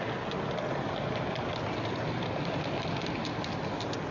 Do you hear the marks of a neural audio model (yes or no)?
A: no